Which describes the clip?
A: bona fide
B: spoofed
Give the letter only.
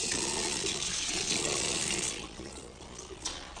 B